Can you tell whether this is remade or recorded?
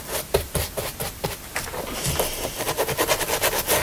recorded